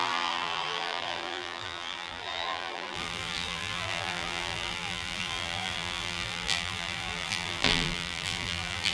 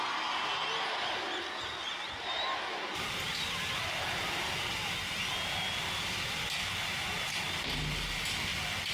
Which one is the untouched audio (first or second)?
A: second